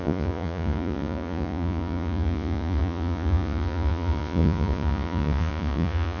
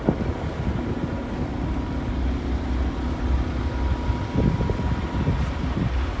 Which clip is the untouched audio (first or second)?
second